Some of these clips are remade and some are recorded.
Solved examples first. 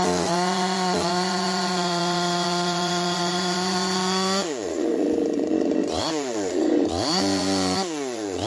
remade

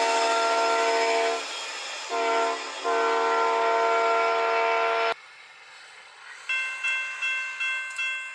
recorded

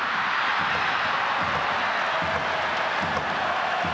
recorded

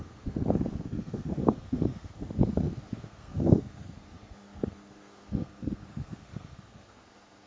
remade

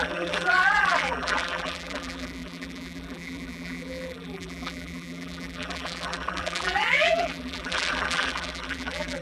remade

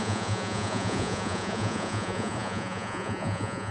remade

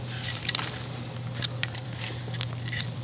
remade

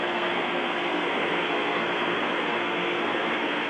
remade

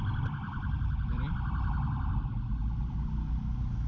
recorded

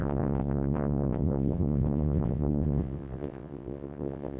remade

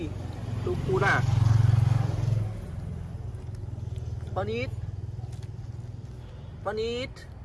recorded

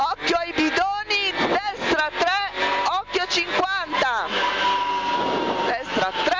recorded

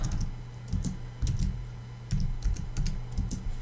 recorded